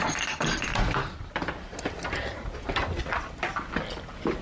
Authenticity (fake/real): real